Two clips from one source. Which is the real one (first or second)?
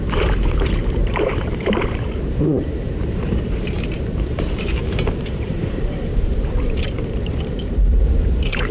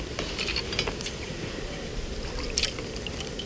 second